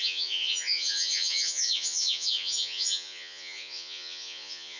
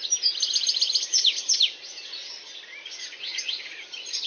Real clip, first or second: second